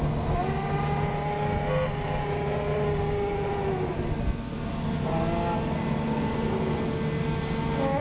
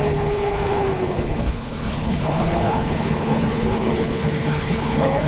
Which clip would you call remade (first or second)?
second